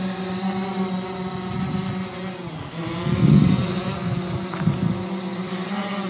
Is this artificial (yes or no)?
no